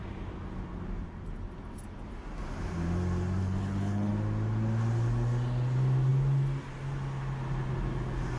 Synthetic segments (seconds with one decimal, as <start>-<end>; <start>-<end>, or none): 3.4-4.1